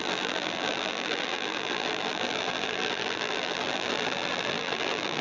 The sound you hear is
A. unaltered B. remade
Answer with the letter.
B